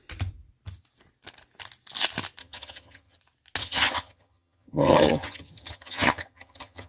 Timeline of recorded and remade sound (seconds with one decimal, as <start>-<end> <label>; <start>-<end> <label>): 0.0-2.4 recorded; 2.4-3.2 remade; 3.2-3.6 recorded; 3.6-6.9 remade

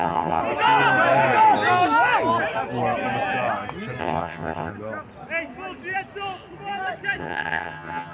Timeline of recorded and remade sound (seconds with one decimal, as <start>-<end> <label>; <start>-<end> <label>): 0.0-0.4 remade; 0.4-4.0 recorded; 4.0-4.7 remade; 4.7-7.2 recorded; 7.2-8.1 remade

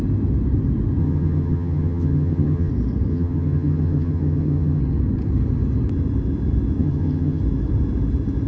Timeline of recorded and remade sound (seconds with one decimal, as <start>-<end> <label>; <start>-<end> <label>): 0.0-1.0 recorded; 1.0-2.7 remade; 2.7-3.1 recorded; 3.1-4.8 remade; 4.8-6.8 recorded; 6.8-7.4 remade; 7.4-8.5 recorded

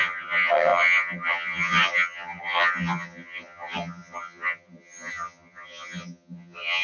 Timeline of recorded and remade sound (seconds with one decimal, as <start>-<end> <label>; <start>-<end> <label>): 0.0-6.8 remade

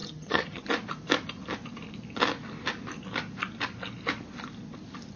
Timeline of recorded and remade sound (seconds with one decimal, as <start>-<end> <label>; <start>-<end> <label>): 0.0-0.6 remade; 0.6-5.2 recorded

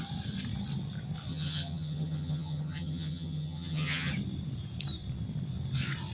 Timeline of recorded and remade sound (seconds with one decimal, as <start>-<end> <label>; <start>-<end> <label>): 0.0-1.3 recorded; 1.3-4.1 remade; 4.1-6.1 recorded

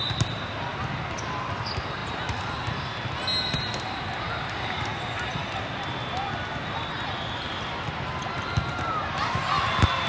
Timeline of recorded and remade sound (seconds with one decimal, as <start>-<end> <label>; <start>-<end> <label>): 0.0-10.1 recorded